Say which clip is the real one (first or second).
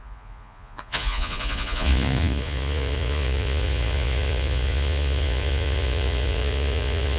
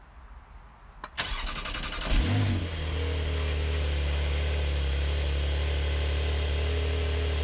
second